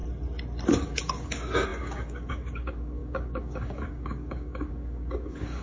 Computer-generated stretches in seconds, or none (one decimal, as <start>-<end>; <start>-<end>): 0.7-5.6